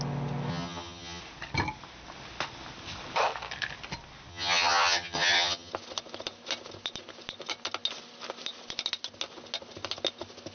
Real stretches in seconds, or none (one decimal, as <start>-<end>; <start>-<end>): 0.0-0.5; 1.2-4.3; 5.7-10.5

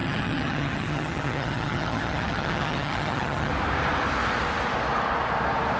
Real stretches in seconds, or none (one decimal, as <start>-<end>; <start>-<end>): 3.5-5.8

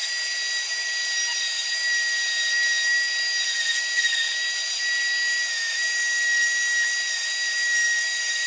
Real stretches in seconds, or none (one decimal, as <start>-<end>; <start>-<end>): 0.0-8.5

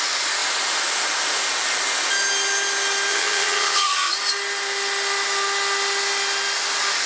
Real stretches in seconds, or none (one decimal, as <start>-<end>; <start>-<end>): 0.0-3.1; 4.1-7.1

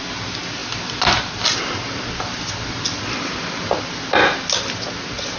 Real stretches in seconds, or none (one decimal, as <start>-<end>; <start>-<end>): 0.0-5.4